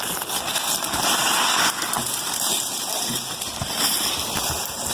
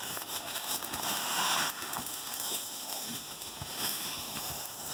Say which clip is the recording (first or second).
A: first